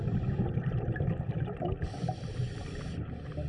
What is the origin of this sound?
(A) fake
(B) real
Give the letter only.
B